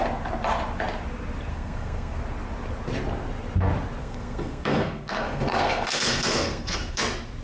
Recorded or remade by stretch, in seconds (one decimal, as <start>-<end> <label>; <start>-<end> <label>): 0.0-1.5 recorded; 1.5-2.2 remade; 2.2-4.0 recorded; 4.0-7.0 remade; 7.0-7.4 recorded